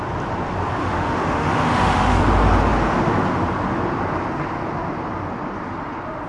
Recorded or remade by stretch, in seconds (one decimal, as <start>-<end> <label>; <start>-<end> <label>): 0.0-0.8 recorded; 0.8-2.2 remade; 2.2-6.3 recorded